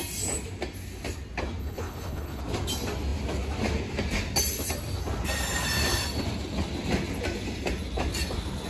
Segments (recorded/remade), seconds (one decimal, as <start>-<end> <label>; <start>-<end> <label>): 0.0-1.6 recorded; 1.6-2.4 remade; 2.4-8.7 recorded

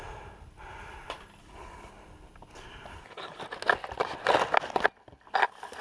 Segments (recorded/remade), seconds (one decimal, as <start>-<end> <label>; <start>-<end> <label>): 0.0-1.4 recorded; 1.4-1.9 remade; 1.9-2.9 recorded; 2.9-3.4 remade; 3.4-5.8 recorded